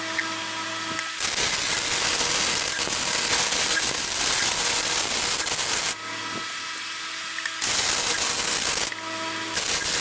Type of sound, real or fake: real